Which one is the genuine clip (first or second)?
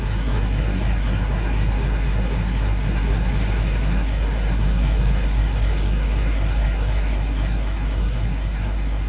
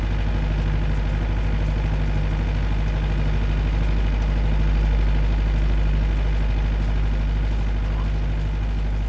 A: second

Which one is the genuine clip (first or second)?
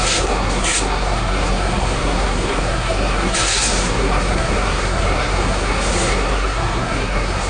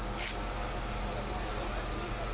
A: second